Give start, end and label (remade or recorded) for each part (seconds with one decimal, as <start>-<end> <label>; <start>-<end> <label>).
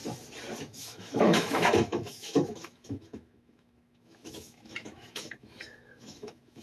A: 0.0-0.6 recorded; 0.6-6.6 remade